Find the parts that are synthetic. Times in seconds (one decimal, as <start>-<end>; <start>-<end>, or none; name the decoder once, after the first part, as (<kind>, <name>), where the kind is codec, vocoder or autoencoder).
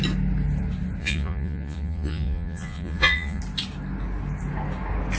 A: 1.0-3.4 (vocoder, Vocos)